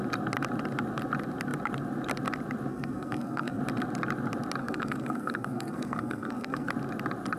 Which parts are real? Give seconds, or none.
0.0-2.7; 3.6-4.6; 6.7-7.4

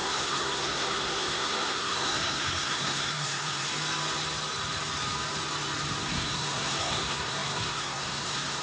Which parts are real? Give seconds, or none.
3.7-6.0

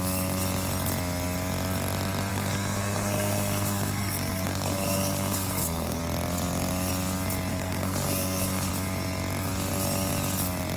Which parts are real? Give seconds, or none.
0.0-2.3; 6.0-7.5; 8.7-10.8

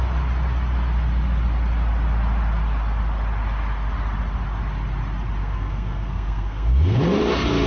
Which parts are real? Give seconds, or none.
0.0-5.4; 7.0-7.7

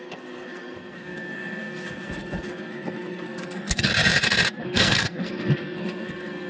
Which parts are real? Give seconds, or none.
3.9-4.6

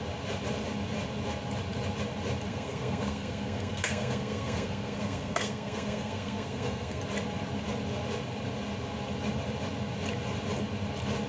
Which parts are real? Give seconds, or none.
0.0-2.5; 7.0-11.3

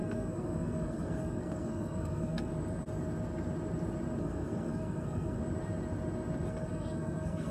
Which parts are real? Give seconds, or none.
2.5-4.2; 5.4-6.5

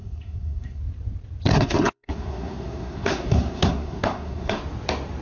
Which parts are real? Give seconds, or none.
0.8-1.5; 4.6-5.2